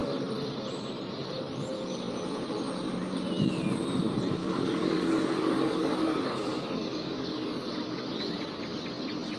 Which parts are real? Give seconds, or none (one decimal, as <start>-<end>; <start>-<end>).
0.0-4.4; 7.7-9.4